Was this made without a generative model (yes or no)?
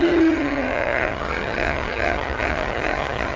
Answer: no